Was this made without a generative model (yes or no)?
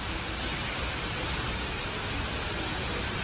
yes